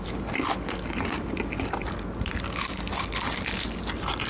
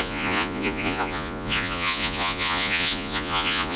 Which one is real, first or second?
first